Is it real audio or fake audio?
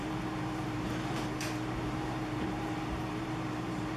fake